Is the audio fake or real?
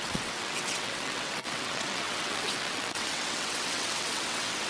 fake